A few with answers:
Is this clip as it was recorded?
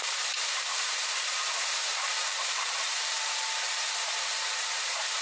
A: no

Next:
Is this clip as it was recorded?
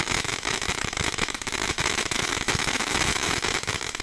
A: no